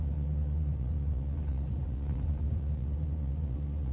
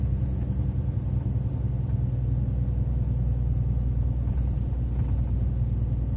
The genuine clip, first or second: second